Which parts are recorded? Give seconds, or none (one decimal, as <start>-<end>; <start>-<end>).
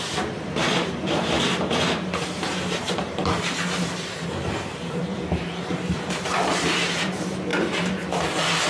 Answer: 7.5-8.7